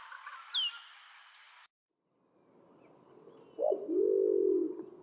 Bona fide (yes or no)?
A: yes